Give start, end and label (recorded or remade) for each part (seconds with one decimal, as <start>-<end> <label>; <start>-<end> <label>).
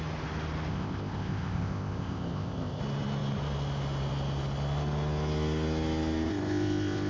0.0-0.7 recorded; 0.7-2.8 remade; 2.8-6.3 recorded; 6.3-7.1 remade